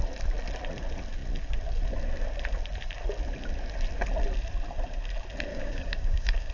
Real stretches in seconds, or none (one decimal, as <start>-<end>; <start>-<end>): 0.0-5.5